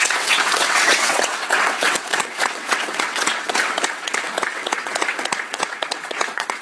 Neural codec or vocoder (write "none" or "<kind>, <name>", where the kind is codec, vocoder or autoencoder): vocoder, WaveNeXt